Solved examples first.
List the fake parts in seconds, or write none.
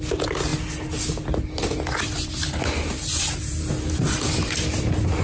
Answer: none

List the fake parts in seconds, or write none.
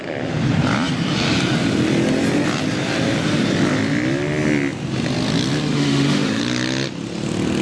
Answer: 5.7-6.4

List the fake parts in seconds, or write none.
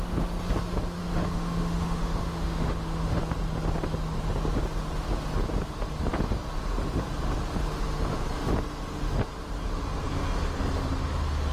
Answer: 1.0-3.2